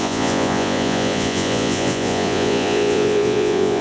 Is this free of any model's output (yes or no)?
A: no